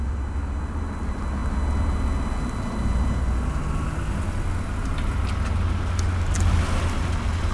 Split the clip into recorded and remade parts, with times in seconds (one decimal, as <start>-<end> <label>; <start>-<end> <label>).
0.0-7.5 recorded

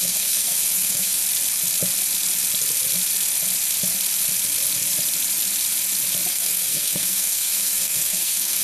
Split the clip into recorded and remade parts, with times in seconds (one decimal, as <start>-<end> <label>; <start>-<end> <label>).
0.0-1.2 remade; 1.2-6.3 recorded; 6.3-8.6 remade